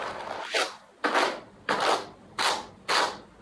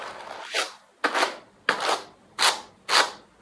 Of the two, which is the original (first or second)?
second